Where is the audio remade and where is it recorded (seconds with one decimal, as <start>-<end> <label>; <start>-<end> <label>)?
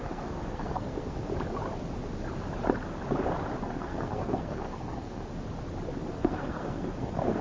0.0-1.3 remade; 1.3-3.6 recorded; 3.6-5.2 remade; 5.2-6.1 recorded; 6.1-7.4 remade